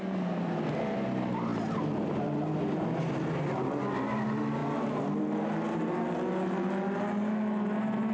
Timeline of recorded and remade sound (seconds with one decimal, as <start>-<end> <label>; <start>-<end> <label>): 0.0-8.1 recorded